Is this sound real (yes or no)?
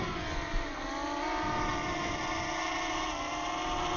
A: yes